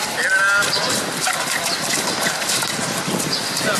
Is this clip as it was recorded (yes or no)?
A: no